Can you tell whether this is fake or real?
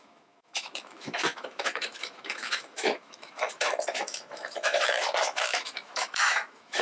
fake